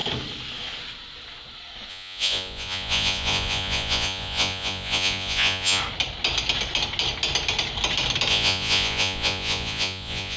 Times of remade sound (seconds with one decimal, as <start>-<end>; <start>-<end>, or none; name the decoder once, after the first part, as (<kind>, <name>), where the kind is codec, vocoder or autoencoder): 1.9-5.8 (vocoder, Vocos); 8.3-10.4